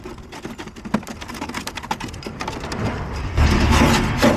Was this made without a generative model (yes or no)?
yes